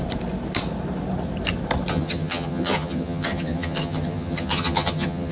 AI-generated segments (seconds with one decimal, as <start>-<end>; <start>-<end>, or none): 1.9-5.3